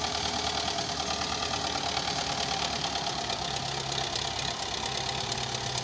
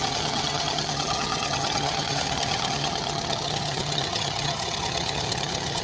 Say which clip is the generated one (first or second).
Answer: second